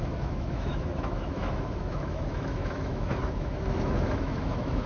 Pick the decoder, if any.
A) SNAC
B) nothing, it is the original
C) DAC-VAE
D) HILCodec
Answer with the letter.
C